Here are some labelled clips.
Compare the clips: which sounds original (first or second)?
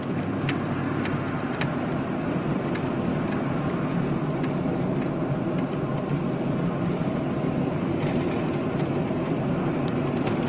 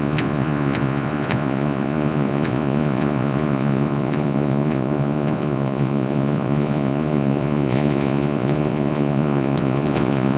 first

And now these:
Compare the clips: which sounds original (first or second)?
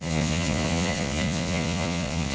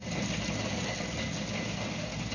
second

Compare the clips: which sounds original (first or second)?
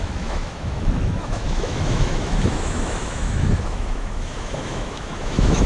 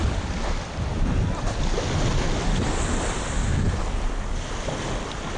second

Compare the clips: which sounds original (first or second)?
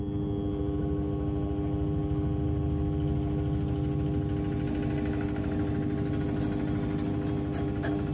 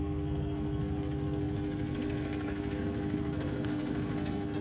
first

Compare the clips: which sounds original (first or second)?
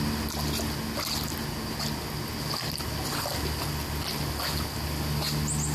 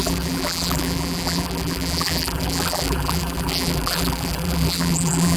first